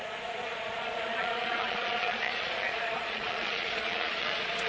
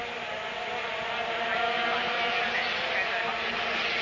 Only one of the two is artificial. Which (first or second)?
first